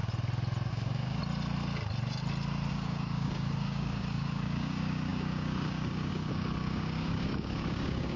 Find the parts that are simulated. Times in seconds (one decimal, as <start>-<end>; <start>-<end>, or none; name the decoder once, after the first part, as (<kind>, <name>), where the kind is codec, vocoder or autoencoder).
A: 0.7-1.2 (codec, DAC); 2.7-8.2